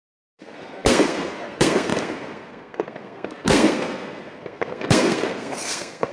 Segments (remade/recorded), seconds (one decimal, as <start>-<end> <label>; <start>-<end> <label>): 0.0-6.1 remade